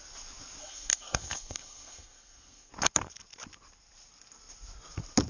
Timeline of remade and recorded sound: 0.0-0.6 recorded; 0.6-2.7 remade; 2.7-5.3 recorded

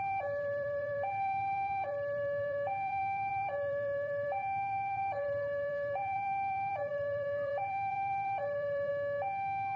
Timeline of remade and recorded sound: 0.0-8.9 remade; 8.9-9.8 recorded

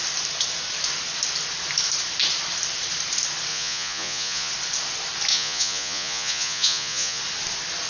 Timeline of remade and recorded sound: 0.0-3.5 recorded; 3.5-4.5 remade; 4.5-5.3 recorded; 5.3-7.2 remade; 7.2-7.9 recorded

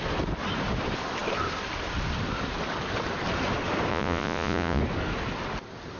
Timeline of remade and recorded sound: 0.0-3.9 recorded; 3.9-4.8 remade; 4.8-6.0 recorded

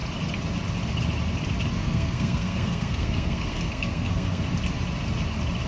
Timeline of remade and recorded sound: 0.0-1.8 recorded; 1.8-4.4 remade; 4.4-5.7 recorded